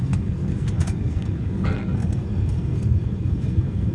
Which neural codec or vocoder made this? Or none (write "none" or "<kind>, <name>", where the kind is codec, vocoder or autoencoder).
codec, SNAC